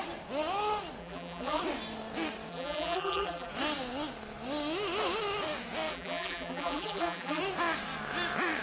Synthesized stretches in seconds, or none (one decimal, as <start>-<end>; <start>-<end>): 1.0-1.6; 2.5-3.5; 5.9-7.4